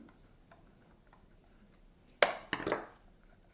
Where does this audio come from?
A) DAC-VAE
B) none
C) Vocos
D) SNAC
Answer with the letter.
B